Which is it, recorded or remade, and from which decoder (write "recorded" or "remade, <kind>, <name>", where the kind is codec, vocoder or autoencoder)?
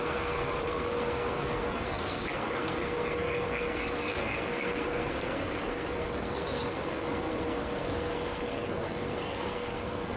remade, codec, SNAC